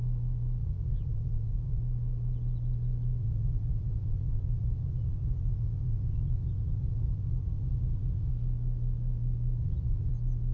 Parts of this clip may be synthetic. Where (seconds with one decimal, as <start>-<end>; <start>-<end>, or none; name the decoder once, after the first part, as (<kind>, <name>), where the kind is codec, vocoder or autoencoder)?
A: 0.6-1.8 (vocoder, Vocos); 3.2-8.3; 9.6-10.1